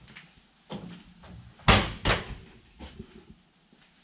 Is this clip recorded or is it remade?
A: recorded